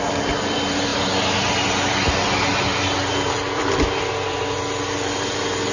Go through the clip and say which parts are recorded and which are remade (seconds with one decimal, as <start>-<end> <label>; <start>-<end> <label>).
0.0-5.7 recorded